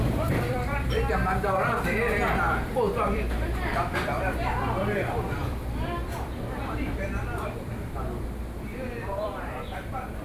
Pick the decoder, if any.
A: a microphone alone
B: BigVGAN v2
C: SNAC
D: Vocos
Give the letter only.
B